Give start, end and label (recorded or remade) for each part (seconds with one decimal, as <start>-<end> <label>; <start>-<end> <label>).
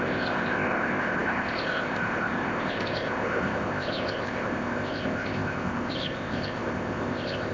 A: 0.0-7.5 remade